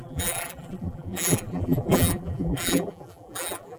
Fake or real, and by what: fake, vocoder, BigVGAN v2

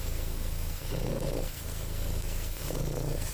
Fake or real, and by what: fake, codec, SNAC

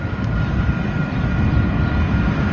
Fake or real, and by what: real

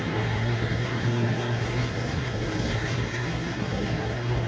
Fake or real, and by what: fake, codec, SNAC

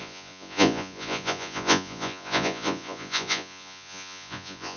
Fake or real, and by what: fake, vocoder, Vocos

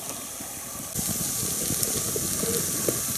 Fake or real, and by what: real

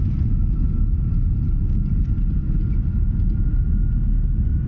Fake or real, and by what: real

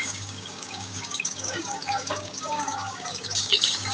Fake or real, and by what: fake, codec, DAC